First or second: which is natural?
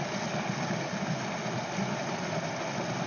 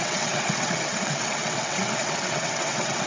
first